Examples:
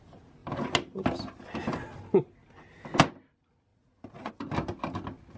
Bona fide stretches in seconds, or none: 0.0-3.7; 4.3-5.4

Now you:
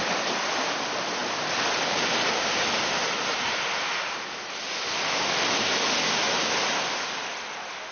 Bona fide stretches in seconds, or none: 0.0-7.9

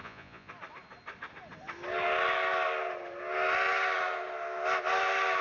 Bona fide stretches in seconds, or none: 0.5-5.4

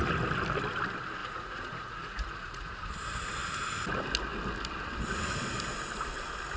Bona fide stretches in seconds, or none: 0.0-1.2; 2.9-6.6